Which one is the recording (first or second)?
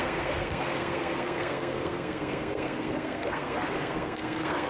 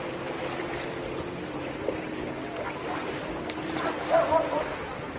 second